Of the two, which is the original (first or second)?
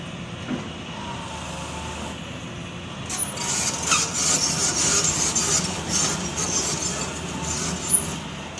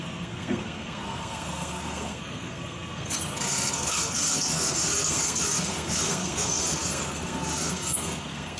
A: first